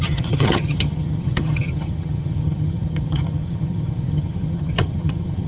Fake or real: fake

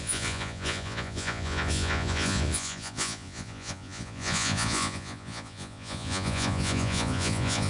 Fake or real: fake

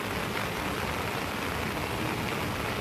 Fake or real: real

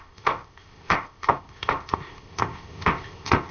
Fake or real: fake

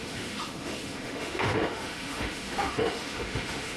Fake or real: fake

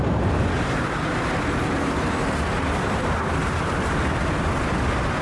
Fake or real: real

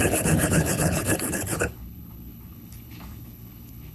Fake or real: fake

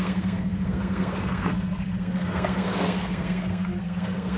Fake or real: fake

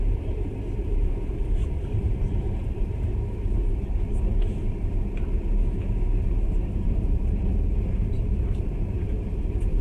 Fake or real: fake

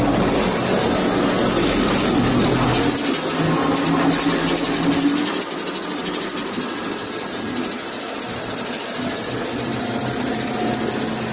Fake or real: real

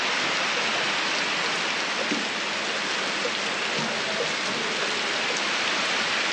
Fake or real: fake